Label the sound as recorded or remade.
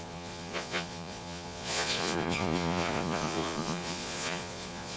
remade